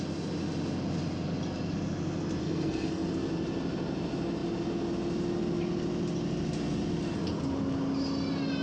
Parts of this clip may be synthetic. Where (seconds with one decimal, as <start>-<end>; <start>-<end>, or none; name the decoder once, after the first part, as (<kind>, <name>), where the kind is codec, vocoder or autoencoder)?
2.4-3.1 (codec, SNAC)